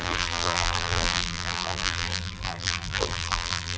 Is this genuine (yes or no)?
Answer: no